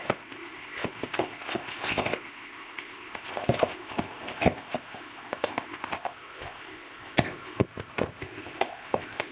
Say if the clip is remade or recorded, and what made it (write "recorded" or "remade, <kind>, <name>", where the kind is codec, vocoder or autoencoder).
remade, codec, ZipCodec